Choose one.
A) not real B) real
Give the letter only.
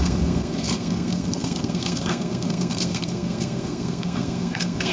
A